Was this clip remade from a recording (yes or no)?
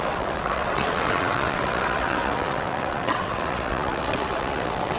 yes